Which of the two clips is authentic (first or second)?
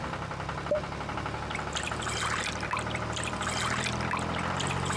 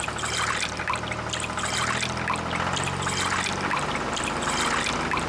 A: second